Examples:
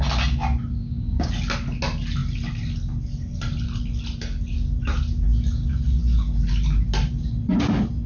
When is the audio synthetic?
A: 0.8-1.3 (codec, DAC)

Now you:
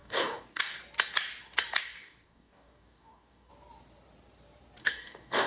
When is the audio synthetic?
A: 0.0-0.8 (codec, DAC); 1.8-3.5; 4.8-5.5

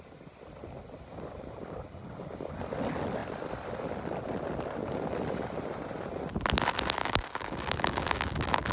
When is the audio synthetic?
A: 7.0-8.7 (codec, DAC)

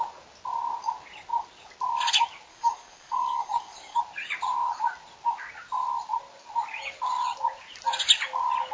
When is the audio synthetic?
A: 2.5-4.0 (codec, DAC)